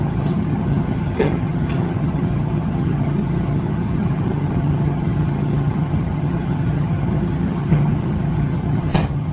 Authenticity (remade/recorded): remade